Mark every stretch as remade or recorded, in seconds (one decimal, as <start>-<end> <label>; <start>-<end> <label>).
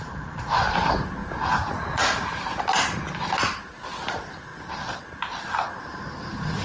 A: 0.0-1.2 recorded; 1.2-2.6 remade; 2.6-6.6 recorded